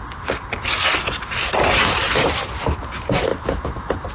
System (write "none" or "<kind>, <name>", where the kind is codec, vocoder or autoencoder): none